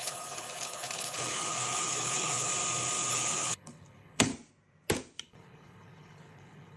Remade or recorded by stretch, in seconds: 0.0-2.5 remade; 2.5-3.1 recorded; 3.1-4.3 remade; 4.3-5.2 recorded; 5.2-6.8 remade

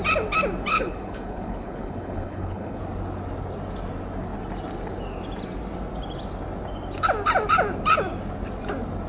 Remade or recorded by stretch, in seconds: 0.0-0.7 recorded; 0.7-2.8 remade; 2.8-9.1 recorded

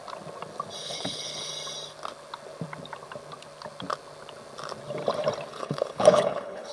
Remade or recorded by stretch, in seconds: 0.0-0.8 recorded; 0.8-1.5 remade; 1.5-5.5 recorded; 5.5-6.7 remade

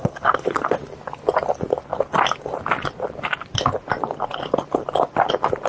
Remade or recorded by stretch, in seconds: 0.0-0.7 remade; 0.7-5.7 recorded